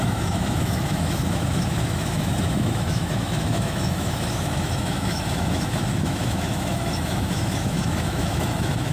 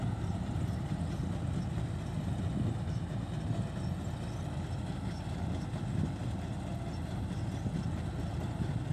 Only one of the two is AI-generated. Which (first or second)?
first